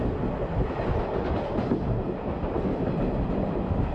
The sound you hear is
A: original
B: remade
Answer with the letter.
A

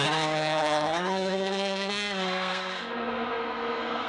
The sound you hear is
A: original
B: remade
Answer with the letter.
B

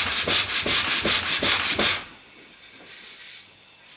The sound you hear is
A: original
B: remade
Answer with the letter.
A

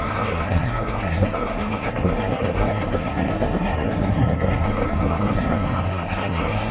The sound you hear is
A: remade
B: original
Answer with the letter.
A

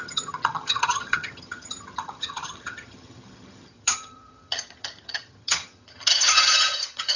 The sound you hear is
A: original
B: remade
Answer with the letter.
B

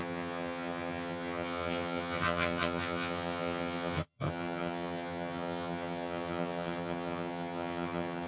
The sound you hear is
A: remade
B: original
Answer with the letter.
A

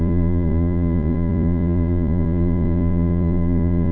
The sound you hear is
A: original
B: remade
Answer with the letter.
B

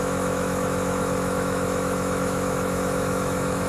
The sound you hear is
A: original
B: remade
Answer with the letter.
B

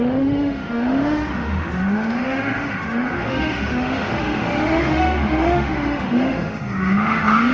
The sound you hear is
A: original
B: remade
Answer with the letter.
B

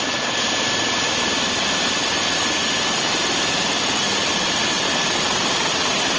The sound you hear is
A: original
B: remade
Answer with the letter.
A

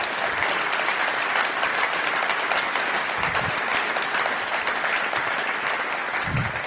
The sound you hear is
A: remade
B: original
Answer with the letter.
B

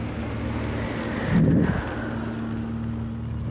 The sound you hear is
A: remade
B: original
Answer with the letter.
B